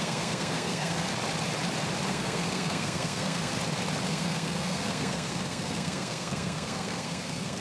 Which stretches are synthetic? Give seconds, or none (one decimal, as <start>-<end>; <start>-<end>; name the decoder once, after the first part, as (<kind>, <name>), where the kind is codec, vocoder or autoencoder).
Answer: 0.0-1.1 (codec, SNAC); 2.1-3.5; 4.1-7.6